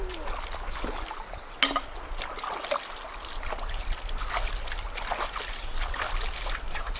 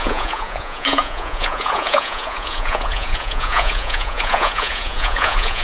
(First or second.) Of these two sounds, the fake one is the second